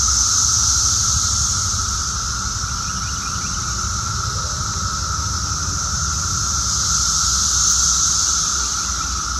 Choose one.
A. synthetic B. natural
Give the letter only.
B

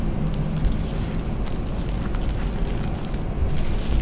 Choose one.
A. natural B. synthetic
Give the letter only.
A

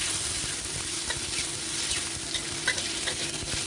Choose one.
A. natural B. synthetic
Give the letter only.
A